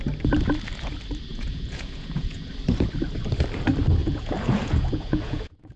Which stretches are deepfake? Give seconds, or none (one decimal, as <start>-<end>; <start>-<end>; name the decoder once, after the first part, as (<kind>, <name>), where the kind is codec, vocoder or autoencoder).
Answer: 1.3-2.5 (vocoder, Vocos); 4.0-5.8